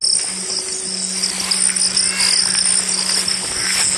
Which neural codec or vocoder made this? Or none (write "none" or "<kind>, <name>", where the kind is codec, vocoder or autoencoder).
none